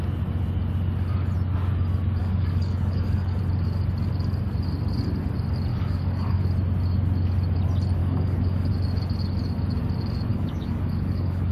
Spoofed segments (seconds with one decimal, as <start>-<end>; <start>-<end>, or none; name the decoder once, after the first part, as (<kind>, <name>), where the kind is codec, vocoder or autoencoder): 2.2-3.4 (codec, DAC); 5.7-6.4; 8.0-8.7; 10.3-11.5